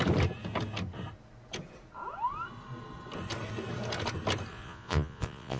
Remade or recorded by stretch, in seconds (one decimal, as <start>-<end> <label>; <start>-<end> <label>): 0.0-4.5 recorded; 4.5-5.6 remade